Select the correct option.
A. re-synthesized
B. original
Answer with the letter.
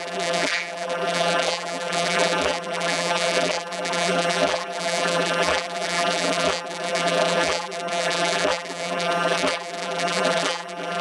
A